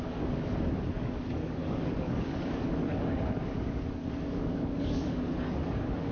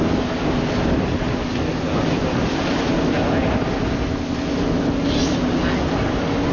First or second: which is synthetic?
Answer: first